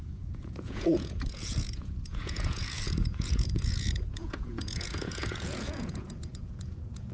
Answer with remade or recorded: remade